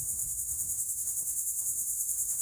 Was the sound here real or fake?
fake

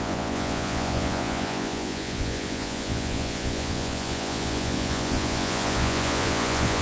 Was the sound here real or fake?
fake